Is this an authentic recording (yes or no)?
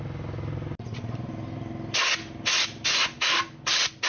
yes